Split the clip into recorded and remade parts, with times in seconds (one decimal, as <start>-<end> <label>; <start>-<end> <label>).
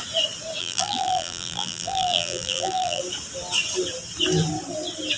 0.0-0.6 recorded; 0.6-3.0 remade; 3.0-5.2 recorded